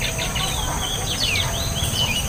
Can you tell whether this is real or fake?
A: real